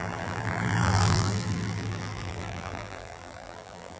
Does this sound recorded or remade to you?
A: remade